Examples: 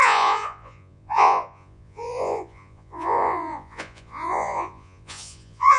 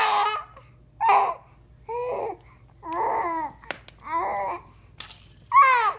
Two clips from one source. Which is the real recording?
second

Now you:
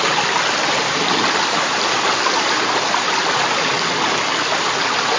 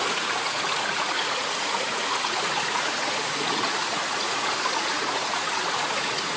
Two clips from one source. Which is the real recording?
first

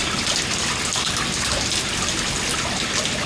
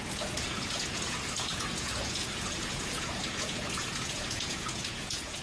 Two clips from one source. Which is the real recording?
first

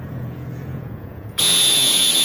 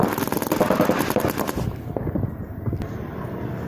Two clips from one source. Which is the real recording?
second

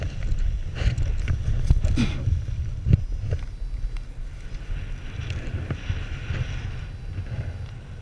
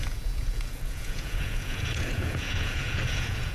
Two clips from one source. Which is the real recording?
first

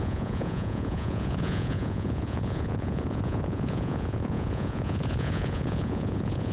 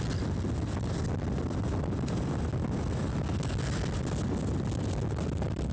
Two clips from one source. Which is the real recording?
second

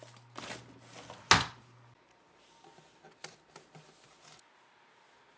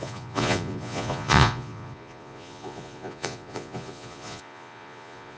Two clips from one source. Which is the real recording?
first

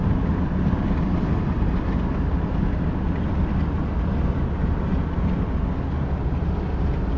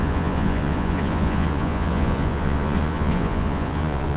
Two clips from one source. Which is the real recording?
first